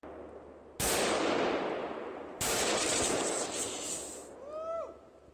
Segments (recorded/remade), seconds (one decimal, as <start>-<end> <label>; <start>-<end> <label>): 0.0-1.8 recorded; 1.8-2.9 remade; 2.9-5.3 recorded

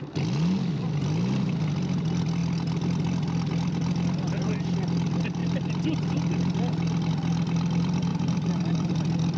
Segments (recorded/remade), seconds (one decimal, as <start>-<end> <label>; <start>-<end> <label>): 0.0-8.1 recorded; 8.1-8.9 remade; 8.9-9.4 recorded

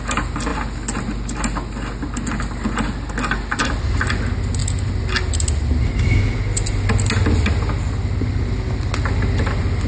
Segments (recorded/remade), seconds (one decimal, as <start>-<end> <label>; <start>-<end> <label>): 0.0-9.9 recorded

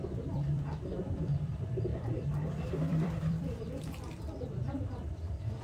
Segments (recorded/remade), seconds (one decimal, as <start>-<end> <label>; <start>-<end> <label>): 0.0-5.6 remade

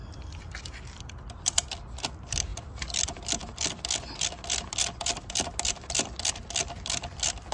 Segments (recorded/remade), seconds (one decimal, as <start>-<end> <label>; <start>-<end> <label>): 0.0-7.5 recorded

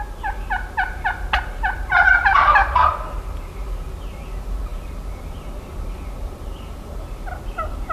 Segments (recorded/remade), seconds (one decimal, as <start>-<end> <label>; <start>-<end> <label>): 0.0-2.2 recorded; 2.2-2.9 remade; 2.9-7.9 recorded

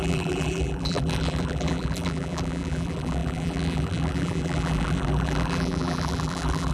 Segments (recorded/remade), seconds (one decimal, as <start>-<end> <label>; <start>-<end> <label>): 0.0-6.7 remade